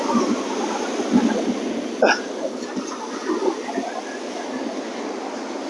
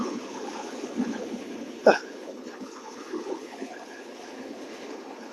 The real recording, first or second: first